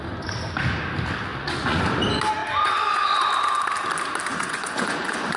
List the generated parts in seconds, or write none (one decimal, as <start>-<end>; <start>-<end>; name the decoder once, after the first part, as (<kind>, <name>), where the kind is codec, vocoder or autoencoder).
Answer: 1.3-1.8 (vocoder, Vocos); 2.4-3.3; 4.3-5.4